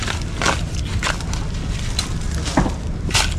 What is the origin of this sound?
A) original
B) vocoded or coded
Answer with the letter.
A